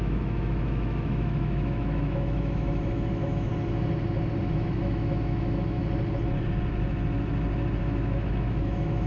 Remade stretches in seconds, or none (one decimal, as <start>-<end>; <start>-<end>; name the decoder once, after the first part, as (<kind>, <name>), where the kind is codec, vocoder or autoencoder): 0.0-3.5 (autoencoder, DAC-VAE); 4.4-5.8; 7.8-9.1